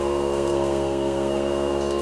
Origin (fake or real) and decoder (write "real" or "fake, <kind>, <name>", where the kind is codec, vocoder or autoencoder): fake, codec, SNAC